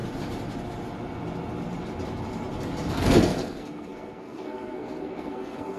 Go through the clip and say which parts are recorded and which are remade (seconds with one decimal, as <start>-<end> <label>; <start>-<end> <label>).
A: 0.0-2.9 recorded; 2.9-5.8 remade